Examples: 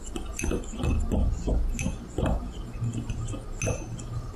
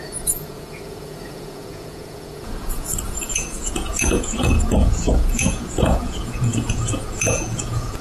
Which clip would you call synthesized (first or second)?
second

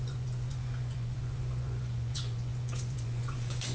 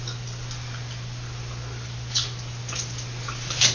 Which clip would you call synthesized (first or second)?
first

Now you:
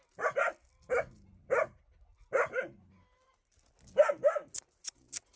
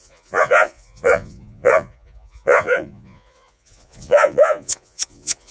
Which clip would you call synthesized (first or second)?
second